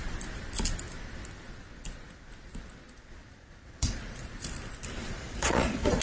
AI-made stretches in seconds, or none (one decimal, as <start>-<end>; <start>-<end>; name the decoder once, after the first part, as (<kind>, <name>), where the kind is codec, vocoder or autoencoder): 3.2-4.3 (vocoder, Vocos); 5.0-6.0

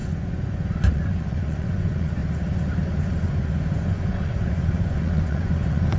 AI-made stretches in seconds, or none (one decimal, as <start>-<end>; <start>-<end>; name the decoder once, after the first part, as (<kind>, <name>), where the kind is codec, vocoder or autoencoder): 0.0-2.2 (vocoder, Vocos); 3.0-6.0

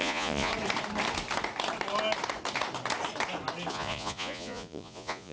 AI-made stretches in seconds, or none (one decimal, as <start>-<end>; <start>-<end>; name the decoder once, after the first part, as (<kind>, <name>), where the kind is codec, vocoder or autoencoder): 0.0-0.5 (vocoder, Vocos); 3.7-5.3

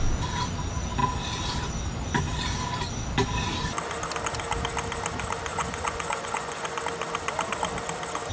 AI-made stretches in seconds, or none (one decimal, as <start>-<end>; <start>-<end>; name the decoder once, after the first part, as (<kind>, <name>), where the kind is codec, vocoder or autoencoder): 5.5-6.8 (vocoder, Vocos)

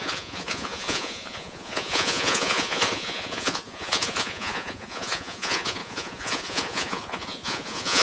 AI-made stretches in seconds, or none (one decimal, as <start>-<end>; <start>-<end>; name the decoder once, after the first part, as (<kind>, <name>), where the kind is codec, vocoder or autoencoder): 0.0-8.0 (vocoder, Vocos)

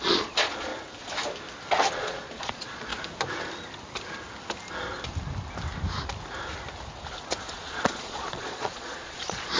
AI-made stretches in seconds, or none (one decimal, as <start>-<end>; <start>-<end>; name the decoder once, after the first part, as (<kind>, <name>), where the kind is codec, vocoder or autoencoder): 0.0-0.7 (vocoder, Vocos); 1.9-2.9; 7.5-9.6